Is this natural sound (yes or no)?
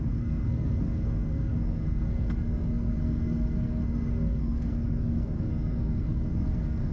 no